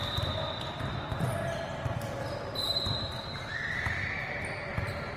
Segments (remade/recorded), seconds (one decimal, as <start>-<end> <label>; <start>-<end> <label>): 0.0-5.2 recorded